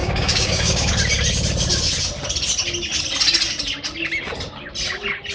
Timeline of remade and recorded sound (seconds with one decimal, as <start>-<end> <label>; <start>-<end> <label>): 0.0-0.9 remade; 0.9-5.3 recorded